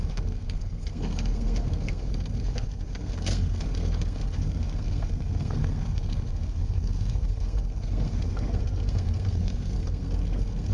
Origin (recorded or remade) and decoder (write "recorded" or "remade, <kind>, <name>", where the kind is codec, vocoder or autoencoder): remade, codec, SNAC